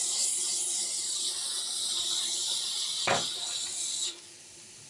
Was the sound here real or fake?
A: real